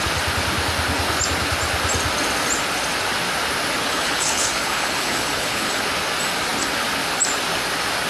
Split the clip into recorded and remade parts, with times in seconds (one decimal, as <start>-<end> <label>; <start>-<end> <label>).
0.0-3.9 recorded; 3.9-5.8 remade; 5.8-8.1 recorded

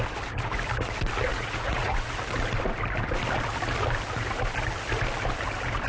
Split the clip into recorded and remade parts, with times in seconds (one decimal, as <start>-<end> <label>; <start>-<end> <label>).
0.0-1.3 recorded; 1.3-2.2 remade; 2.2-5.9 recorded

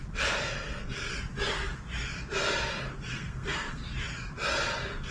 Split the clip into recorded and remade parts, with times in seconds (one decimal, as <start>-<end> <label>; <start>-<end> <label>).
0.0-3.1 recorded; 3.1-3.8 remade; 3.8-5.1 recorded

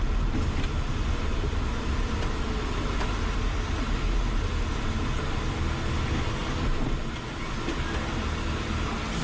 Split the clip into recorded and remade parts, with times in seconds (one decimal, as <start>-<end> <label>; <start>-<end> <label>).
0.0-9.2 recorded